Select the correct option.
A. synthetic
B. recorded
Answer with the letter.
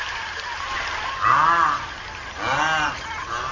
B